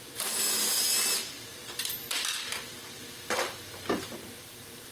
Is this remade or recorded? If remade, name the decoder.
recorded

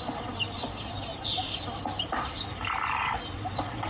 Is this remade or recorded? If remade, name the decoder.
remade, vocoder, BigVGAN v2